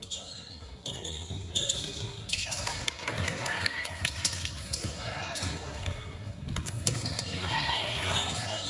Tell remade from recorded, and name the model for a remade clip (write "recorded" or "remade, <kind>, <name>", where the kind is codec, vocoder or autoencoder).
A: remade, codec, SNAC